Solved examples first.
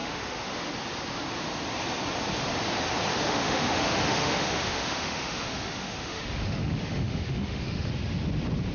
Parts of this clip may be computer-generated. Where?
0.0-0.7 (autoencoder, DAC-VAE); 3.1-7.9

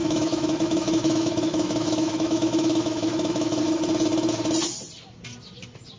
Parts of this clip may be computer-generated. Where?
0.0-3.6 (autoencoder, DAC-VAE)

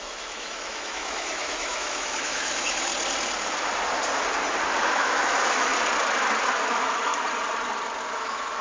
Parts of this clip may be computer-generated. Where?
0.0-2.9 (autoencoder, DAC-VAE); 4.9-5.7; 6.6-7.1; 8.0-8.6